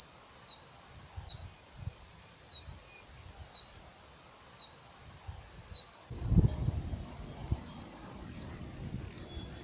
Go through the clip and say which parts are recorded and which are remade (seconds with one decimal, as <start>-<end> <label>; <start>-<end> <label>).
0.0-1.5 recorded; 1.5-2.8 remade; 2.8-7.4 recorded; 7.4-8.6 remade; 8.6-9.6 recorded